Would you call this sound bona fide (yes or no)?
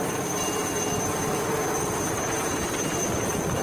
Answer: yes